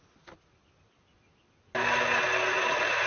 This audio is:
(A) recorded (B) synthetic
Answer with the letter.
A